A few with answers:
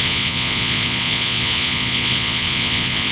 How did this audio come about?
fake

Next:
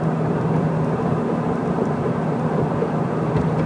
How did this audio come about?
real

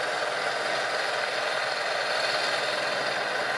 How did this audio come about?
real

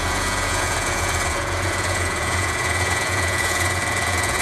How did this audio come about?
fake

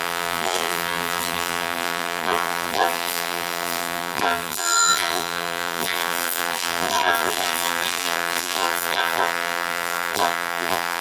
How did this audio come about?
fake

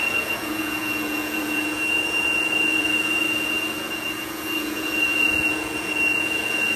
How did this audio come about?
fake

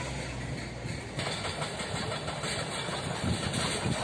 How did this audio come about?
real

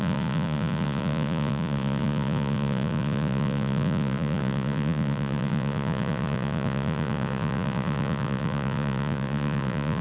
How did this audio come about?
fake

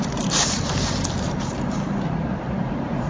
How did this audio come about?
fake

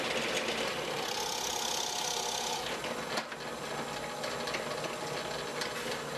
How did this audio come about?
real